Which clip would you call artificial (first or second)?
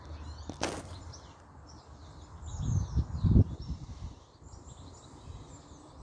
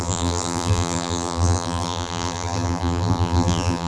second